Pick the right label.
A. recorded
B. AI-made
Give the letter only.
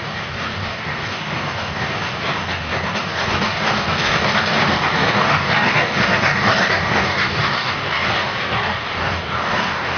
B